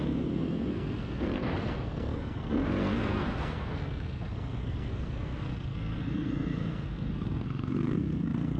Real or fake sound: fake